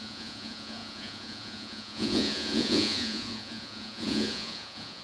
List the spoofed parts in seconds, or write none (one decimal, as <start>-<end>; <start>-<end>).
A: 0.0-5.0